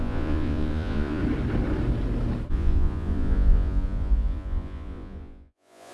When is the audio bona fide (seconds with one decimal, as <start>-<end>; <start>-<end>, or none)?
1.2-2.5